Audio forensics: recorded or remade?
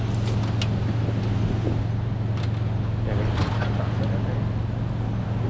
recorded